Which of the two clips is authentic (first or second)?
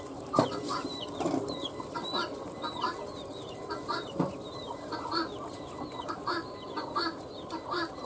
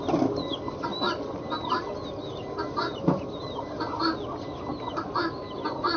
second